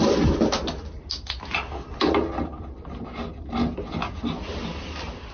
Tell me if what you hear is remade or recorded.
recorded